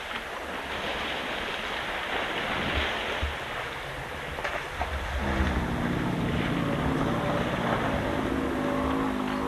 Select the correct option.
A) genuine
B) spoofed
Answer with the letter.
A